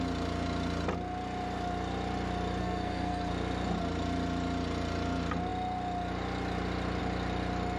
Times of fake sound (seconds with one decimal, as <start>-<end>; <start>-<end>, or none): 2.6-3.3